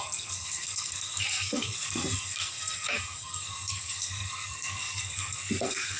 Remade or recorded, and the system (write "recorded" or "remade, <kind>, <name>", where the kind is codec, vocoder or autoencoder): remade, codec, SNAC